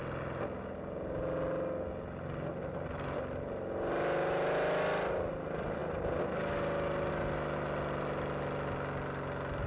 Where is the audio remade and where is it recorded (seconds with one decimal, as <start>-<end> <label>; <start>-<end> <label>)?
0.0-9.7 recorded